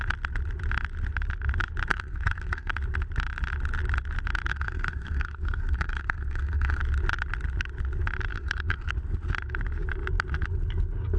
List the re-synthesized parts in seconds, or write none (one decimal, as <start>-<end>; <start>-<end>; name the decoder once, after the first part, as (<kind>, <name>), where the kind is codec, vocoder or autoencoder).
1.9-2.7 (codec, SNAC); 4.5-6.8; 8.3-8.9